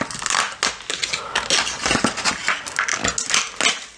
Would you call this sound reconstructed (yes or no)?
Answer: no